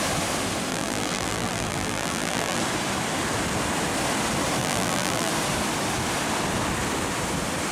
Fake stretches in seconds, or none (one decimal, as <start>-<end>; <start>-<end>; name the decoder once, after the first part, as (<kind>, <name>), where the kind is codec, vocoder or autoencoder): 0.7-2.6 (vocoder, BigVGAN v2); 4.6-5.3